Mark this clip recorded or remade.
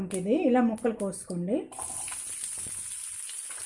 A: recorded